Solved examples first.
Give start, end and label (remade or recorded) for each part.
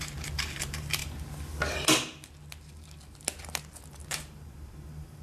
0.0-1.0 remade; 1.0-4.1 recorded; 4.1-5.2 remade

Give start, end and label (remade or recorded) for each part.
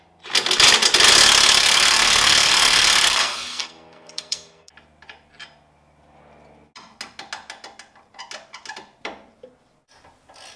0.0-1.6 recorded; 1.6-4.7 remade; 4.7-10.6 recorded